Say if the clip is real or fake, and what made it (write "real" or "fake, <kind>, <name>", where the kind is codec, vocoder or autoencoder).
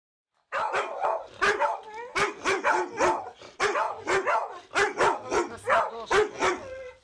real